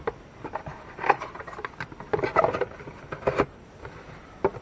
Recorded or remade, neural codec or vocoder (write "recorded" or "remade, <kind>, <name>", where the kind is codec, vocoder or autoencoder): recorded